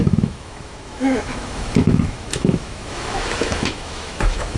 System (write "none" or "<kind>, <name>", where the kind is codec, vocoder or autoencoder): autoencoder, DAC-VAE